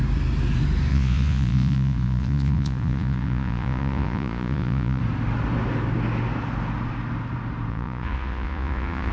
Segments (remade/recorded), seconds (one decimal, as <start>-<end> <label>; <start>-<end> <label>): 0.0-0.9 recorded; 0.9-5.0 remade; 5.0-7.7 recorded; 7.7-9.1 remade